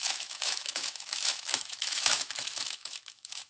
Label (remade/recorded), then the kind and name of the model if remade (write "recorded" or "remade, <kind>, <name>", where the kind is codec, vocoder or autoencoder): remade, autoencoder, DAC-VAE